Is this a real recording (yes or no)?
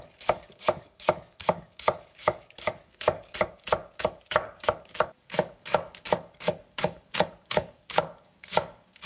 no